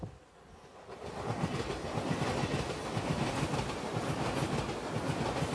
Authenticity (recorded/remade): recorded